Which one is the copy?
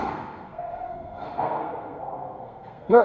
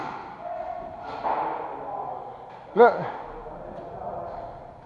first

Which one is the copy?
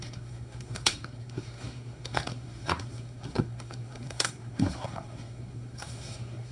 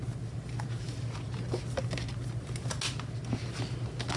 first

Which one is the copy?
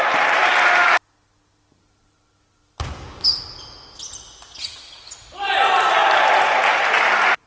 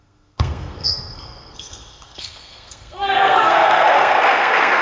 second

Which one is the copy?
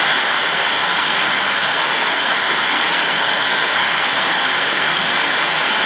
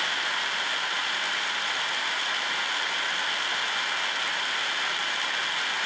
first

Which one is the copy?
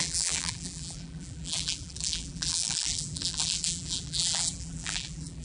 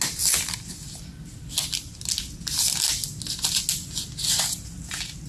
first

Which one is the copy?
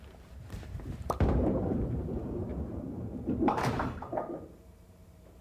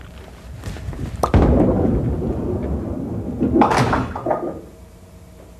first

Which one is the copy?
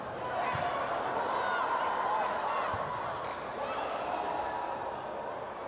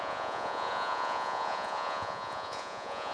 second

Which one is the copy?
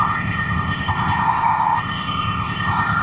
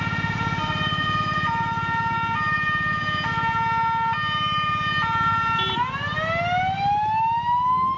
first